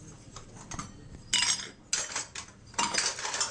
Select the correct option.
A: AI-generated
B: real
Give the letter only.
B